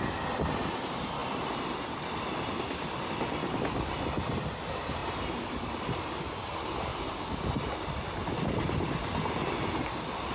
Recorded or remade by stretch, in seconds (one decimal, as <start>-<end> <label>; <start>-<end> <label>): 0.0-5.0 recorded; 5.0-6.2 remade; 6.2-6.9 recorded; 6.9-7.6 remade; 7.6-10.3 recorded